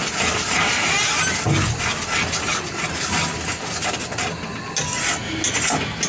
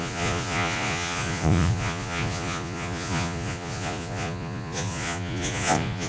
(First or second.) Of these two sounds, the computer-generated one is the second